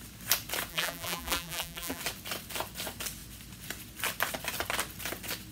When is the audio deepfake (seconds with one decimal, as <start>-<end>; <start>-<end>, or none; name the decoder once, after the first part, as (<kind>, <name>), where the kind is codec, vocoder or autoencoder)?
0.7-2.0 (vocoder, BigVGAN v2)